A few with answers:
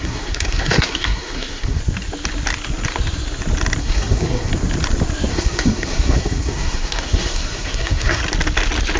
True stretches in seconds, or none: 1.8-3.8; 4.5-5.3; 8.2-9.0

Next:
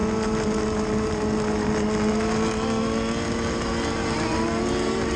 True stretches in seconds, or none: 0.0-5.2

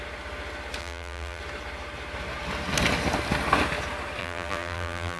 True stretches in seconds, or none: 0.0-0.8; 1.4-4.2

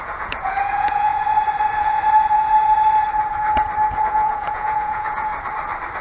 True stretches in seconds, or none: 1.1-4.0; 5.3-6.0

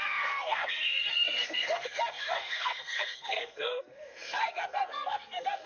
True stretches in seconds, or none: none

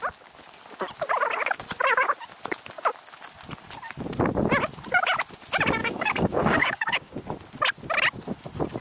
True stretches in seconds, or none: 0.0-5.8; 7.2-8.8